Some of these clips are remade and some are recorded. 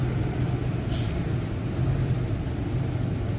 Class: recorded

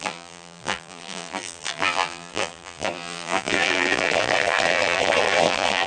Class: remade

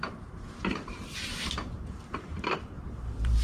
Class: remade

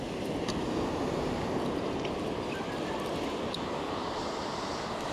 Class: recorded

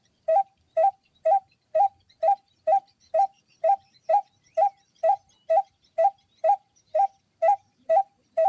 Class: remade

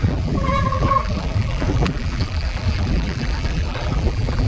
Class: remade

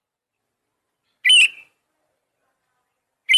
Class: recorded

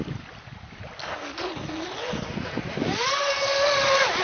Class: recorded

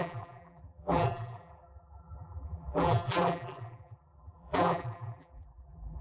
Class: remade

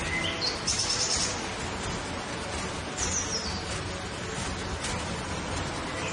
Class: recorded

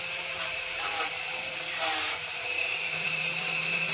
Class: remade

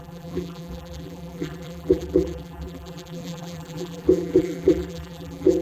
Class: remade